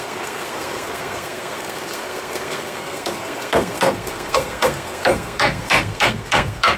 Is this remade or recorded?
remade